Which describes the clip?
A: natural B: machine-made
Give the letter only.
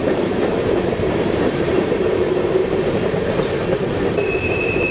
B